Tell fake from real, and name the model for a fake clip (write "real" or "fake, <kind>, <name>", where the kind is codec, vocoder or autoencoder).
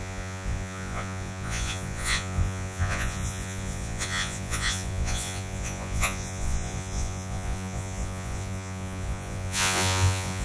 fake, vocoder, Vocos